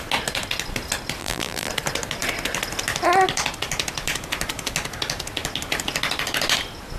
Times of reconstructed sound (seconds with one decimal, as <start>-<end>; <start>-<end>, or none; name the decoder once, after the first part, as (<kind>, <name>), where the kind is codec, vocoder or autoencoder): 1.2-1.7 (vocoder, BigVGAN v2)